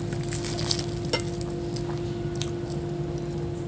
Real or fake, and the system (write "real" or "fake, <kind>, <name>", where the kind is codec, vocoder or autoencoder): real